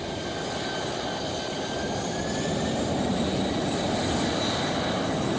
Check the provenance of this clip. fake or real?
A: real